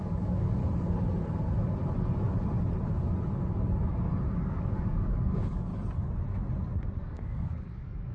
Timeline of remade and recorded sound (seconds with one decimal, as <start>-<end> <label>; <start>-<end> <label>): 0.0-0.6 remade; 0.6-4.4 recorded; 4.4-5.7 remade; 5.7-7.0 recorded; 7.0-8.1 remade